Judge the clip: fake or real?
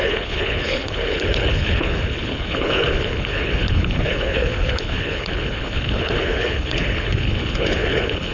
fake